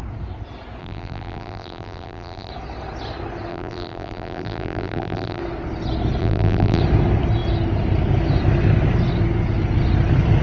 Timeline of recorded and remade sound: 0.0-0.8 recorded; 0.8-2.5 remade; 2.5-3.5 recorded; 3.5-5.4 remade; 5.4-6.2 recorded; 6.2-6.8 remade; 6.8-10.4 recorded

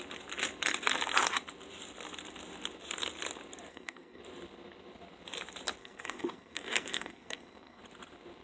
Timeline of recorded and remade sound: 0.0-3.7 recorded; 3.7-4.2 remade; 4.2-5.8 recorded; 5.8-7.8 remade; 7.8-8.4 recorded

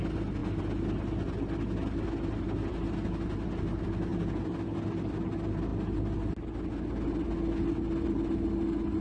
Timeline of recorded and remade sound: 0.0-9.0 recorded

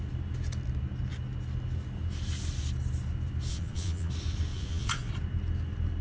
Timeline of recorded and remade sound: 0.0-3.5 recorded; 3.5-4.1 remade; 4.1-4.5 recorded; 4.5-5.1 remade; 5.1-6.0 recorded

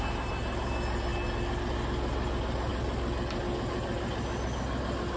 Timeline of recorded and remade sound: 0.0-5.2 recorded

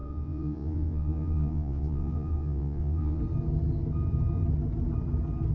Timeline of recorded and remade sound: 0.0-3.2 remade; 3.2-5.5 recorded

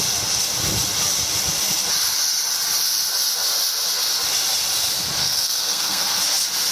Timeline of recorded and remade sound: 0.0-5.2 recorded; 5.2-6.2 remade; 6.2-6.7 recorded